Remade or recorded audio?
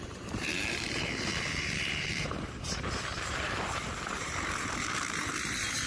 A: remade